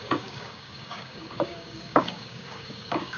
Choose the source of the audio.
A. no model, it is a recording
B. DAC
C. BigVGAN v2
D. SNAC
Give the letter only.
B